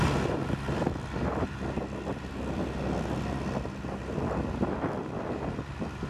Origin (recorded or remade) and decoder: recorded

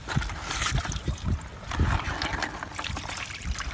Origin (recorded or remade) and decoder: recorded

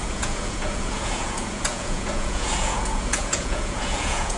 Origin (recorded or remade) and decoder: remade, vocoder, Vocos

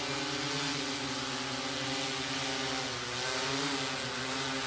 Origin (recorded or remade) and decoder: recorded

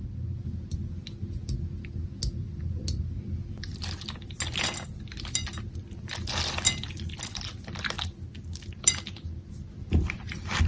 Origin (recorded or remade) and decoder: recorded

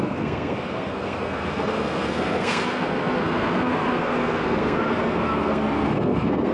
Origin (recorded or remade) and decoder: remade, codec, SNAC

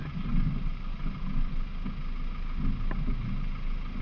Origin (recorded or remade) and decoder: recorded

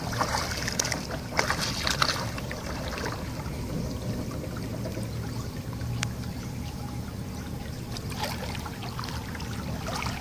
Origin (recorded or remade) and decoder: recorded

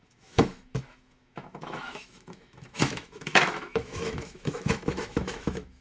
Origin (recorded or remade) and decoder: remade, autoencoder, DAC-VAE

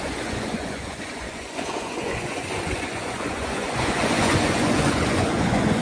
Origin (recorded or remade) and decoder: remade, vocoder, Vocos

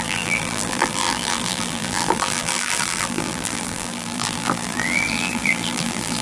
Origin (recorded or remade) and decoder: remade, vocoder, BigVGAN v2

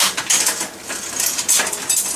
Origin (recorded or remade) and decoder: recorded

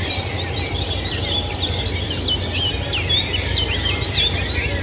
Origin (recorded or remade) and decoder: recorded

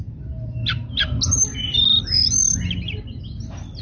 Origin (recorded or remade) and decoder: recorded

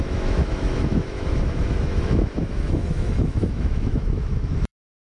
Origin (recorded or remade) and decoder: remade, autoencoder, DAC-VAE